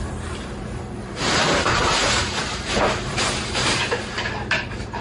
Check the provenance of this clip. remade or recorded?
remade